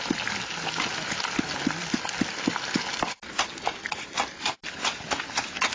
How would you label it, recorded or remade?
recorded